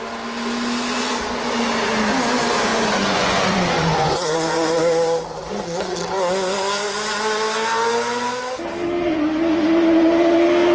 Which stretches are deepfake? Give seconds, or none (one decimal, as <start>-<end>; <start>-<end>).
2.7-4.8